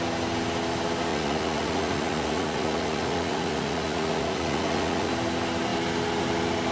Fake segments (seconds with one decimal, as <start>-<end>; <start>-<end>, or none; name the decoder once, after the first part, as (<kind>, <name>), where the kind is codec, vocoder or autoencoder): 1.1-5.1 (vocoder, Vocos)